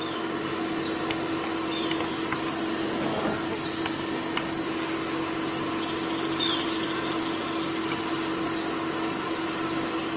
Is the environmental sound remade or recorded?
recorded